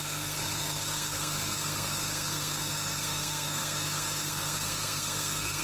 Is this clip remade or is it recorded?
remade